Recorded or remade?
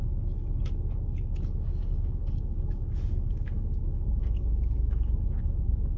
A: remade